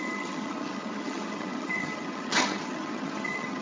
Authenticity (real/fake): fake